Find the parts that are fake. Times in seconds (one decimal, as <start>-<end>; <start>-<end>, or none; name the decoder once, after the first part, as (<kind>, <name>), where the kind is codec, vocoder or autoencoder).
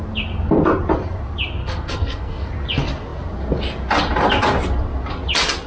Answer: 1.6-2.5 (codec, SNAC)